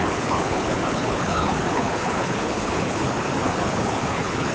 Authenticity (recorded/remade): remade